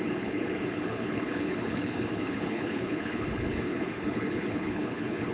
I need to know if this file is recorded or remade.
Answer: remade